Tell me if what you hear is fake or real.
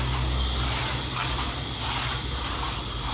real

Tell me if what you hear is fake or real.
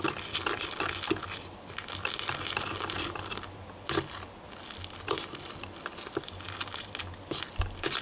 real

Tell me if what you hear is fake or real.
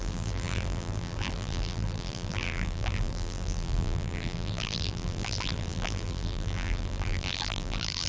fake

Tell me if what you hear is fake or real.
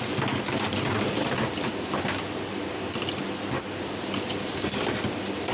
real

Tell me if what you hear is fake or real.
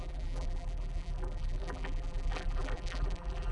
fake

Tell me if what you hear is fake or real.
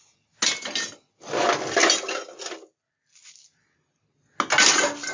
real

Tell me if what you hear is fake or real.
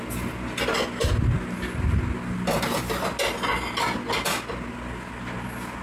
real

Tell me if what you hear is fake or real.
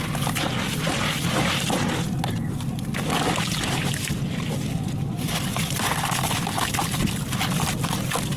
real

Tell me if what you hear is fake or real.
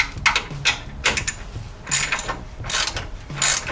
real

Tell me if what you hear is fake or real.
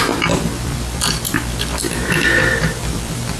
fake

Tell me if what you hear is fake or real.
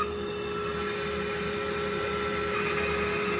real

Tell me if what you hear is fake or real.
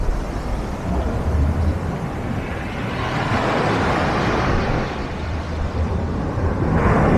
fake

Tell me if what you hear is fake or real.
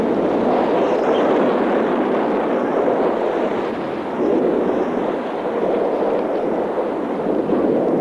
real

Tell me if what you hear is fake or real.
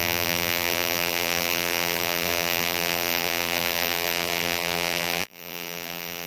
fake